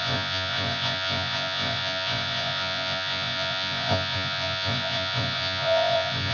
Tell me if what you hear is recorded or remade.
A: remade